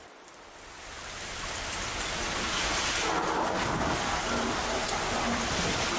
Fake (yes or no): no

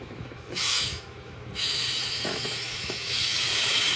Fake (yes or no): yes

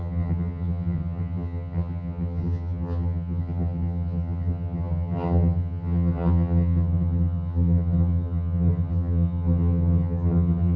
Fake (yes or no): yes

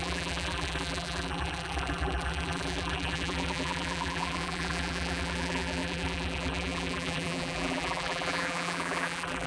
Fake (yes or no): yes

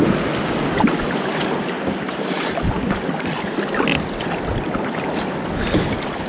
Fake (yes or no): no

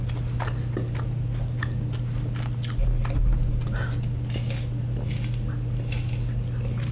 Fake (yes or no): no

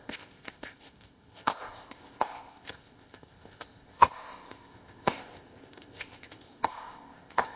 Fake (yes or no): yes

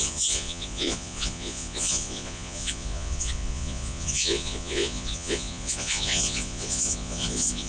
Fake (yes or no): yes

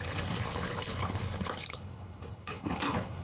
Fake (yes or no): yes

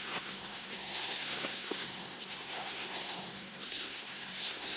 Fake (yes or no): yes